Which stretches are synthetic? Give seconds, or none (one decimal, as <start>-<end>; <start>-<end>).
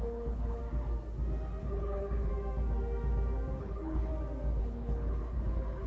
0.0-0.6; 1.6-2.3; 3.6-4.1; 4.6-5.9